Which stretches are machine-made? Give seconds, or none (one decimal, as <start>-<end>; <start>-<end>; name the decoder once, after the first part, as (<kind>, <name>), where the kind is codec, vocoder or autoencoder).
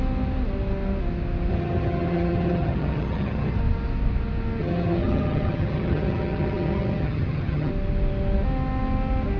1.5-3.6 (vocoder, HiFi-GAN); 4.6-7.7